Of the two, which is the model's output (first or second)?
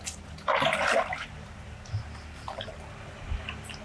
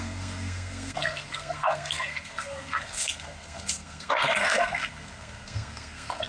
second